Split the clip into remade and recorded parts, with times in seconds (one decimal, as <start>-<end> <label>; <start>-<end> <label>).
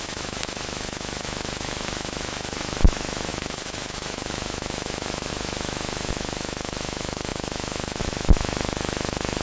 0.0-9.4 remade